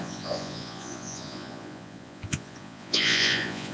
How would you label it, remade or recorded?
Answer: remade